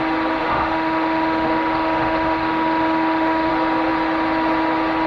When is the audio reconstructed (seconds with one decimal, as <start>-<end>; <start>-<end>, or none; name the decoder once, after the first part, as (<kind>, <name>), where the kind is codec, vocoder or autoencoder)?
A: 0.4-3.5 (autoencoder, DAC-VAE)